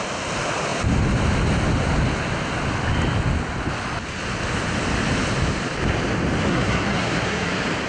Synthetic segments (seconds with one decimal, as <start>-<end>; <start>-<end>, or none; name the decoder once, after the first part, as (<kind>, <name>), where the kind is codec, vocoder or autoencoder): 6.5-7.5 (codec, SNAC)